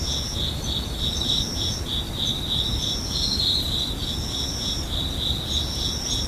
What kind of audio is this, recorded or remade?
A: recorded